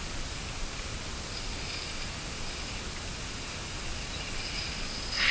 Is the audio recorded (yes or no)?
yes